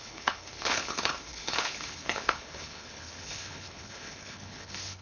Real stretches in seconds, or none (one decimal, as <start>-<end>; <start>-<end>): none